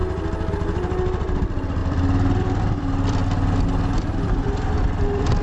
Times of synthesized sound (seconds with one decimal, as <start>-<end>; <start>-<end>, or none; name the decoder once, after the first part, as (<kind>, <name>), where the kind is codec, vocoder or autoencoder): 0.5-3.2 (vocoder, BigVGAN v2); 4.0-5.4